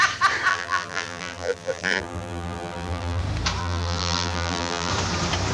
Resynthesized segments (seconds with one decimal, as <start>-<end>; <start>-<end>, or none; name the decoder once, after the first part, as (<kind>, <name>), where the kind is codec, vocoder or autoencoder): 0.5-3.2 (vocoder, BigVGAN v2); 3.6-4.9